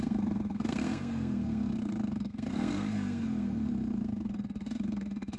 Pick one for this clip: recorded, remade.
remade